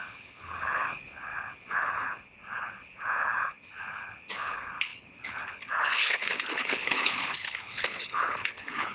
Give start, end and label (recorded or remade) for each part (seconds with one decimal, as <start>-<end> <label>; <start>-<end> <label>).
0.0-8.9 remade